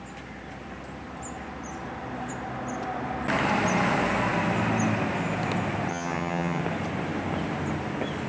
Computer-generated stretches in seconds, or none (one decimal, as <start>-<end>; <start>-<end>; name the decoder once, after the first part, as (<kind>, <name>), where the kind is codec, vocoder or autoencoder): 5.9-6.6 (vocoder, HiFi-GAN)